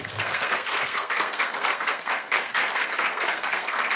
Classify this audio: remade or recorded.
remade